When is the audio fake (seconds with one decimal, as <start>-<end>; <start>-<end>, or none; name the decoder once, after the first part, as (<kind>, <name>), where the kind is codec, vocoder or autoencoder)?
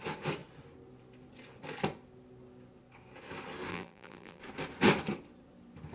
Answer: 3.7-4.4 (vocoder, BigVGAN v2)